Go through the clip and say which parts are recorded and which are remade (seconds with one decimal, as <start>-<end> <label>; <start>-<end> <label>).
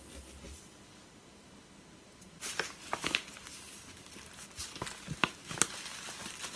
0.0-1.1 recorded; 1.1-4.3 remade; 4.3-6.6 recorded